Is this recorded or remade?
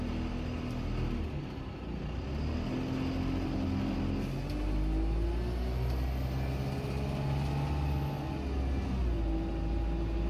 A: recorded